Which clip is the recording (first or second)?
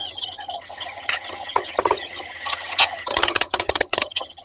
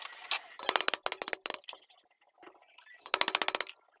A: second